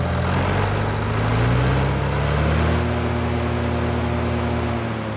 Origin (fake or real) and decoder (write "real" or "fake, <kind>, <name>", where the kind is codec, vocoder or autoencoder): real